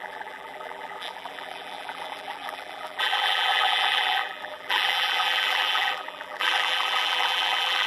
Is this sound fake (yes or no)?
yes